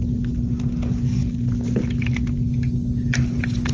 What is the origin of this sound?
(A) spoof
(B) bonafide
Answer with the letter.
B